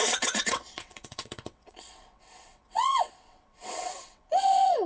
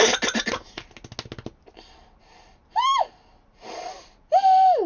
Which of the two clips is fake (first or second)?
first